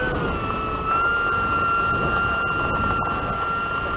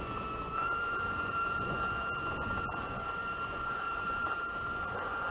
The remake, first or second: second